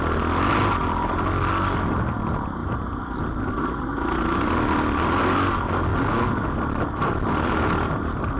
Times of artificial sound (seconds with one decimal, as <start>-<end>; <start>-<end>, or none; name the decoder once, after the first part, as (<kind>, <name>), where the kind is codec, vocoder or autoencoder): none